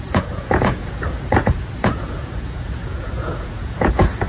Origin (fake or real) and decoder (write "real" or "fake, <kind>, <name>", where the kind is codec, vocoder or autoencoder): fake, vocoder, Vocos